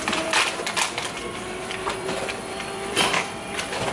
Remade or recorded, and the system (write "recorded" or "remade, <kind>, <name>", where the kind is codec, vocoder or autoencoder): remade, vocoder, BigVGAN v2